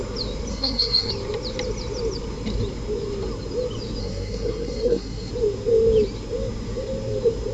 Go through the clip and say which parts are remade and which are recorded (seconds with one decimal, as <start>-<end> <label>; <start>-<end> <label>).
0.0-0.5 recorded; 0.5-1.1 remade; 1.1-4.0 recorded; 4.0-5.3 remade; 5.3-7.5 recorded